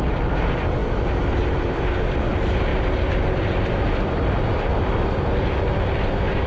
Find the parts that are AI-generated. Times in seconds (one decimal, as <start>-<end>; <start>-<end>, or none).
0.0-4.7; 6.0-6.5

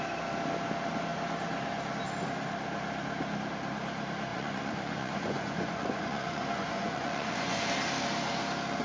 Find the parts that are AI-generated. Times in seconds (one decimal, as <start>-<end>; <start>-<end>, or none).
4.3-7.7